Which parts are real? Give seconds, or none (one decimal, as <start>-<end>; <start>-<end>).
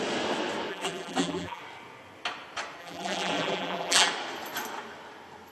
0.0-0.7; 1.6-2.8; 4.1-5.5